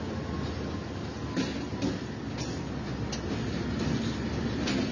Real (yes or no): yes